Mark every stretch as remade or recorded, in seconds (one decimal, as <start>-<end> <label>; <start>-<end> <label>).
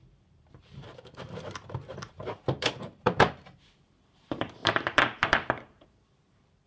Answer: 0.0-6.7 remade